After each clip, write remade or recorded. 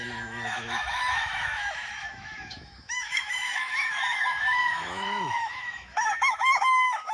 remade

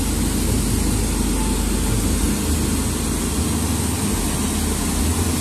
recorded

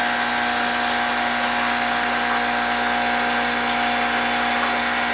recorded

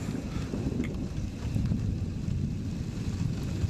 recorded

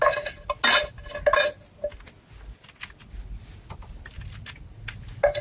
recorded